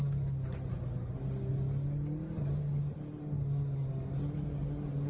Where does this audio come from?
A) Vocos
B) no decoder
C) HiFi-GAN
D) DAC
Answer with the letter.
B